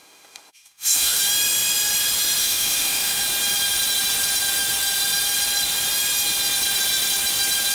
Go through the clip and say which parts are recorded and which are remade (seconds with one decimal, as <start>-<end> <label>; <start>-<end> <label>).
0.0-1.2 remade; 1.2-2.4 recorded; 2.4-3.2 remade; 3.2-7.7 recorded